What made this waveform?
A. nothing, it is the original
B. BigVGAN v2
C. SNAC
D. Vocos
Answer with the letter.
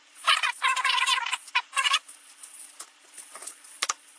D